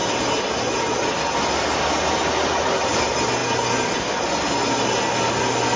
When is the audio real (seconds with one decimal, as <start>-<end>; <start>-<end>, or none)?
0.0-5.8